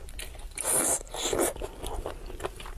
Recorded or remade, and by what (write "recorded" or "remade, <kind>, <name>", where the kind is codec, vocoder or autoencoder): recorded